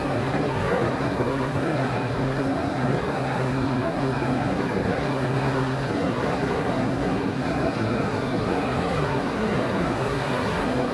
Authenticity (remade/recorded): remade